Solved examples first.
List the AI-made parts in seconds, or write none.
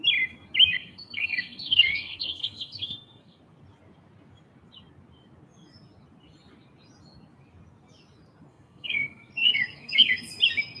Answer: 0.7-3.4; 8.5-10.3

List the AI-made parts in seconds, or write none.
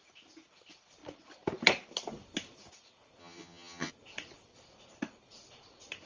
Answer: 3.2-3.9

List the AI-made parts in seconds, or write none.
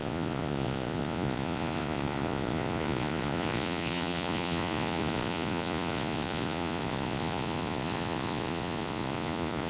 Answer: 0.0-9.7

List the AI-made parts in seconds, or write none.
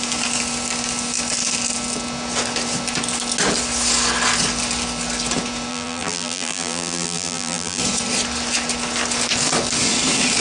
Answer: 5.7-7.8